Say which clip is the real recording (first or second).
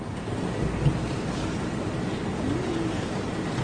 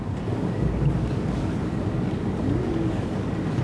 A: first